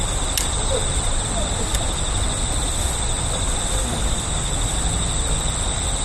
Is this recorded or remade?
recorded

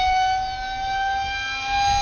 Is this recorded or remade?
recorded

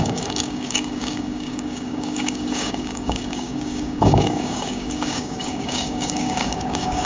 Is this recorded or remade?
remade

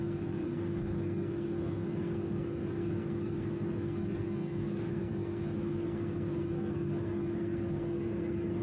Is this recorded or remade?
remade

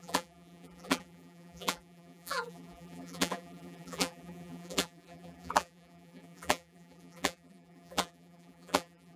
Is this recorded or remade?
remade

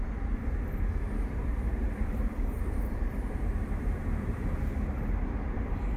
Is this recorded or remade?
remade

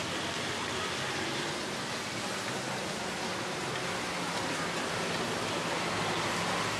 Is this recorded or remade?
recorded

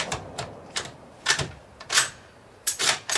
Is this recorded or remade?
remade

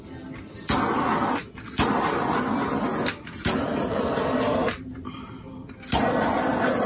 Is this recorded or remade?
recorded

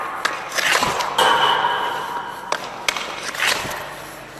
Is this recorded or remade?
recorded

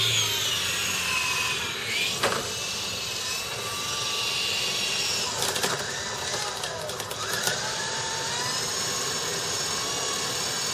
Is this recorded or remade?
recorded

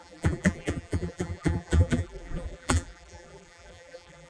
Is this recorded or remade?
remade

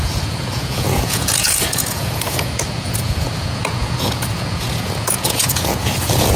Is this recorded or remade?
remade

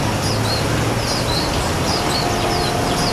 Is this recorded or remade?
recorded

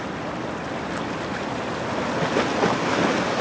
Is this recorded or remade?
recorded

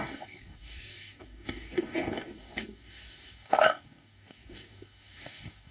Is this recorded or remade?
remade